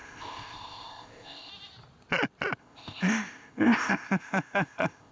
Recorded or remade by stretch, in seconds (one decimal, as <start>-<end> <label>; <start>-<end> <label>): 0.0-1.5 remade; 1.5-2.6 recorded; 2.6-5.1 remade

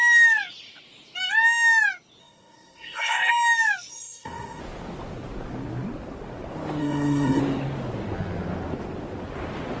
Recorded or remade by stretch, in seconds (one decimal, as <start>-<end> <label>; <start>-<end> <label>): 0.0-2.2 recorded; 2.2-3.3 remade; 3.3-3.9 recorded; 3.9-4.6 remade; 4.6-6.8 recorded; 6.8-7.4 remade; 7.4-9.8 recorded